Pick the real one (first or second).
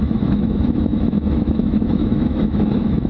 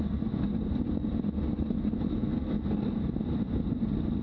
second